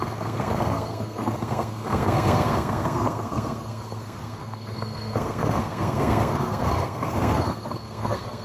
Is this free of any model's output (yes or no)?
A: no